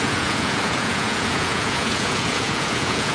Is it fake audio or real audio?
fake